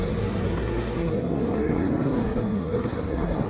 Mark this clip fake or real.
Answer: fake